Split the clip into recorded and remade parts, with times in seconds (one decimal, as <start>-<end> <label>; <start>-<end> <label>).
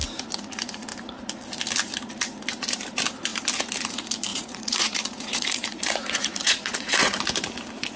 0.0-4.3 recorded; 4.3-7.2 remade; 7.2-8.0 recorded